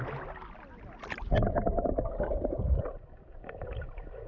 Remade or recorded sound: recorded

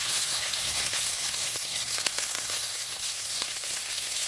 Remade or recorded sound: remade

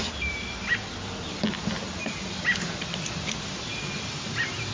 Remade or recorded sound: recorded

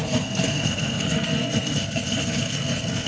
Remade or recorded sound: remade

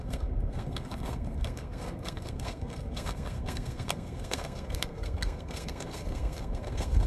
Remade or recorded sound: remade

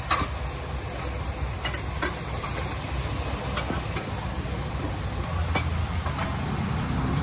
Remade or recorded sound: recorded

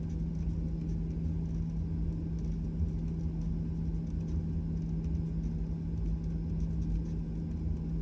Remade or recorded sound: recorded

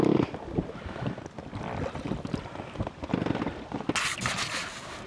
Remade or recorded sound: recorded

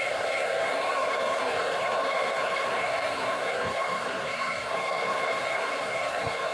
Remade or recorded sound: remade